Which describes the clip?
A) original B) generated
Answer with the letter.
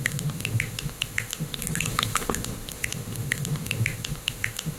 B